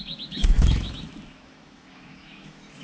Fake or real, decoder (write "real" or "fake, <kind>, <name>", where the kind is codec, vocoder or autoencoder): fake, autoencoder, DAC-VAE